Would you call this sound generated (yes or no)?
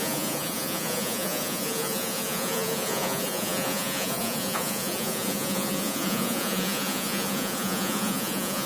yes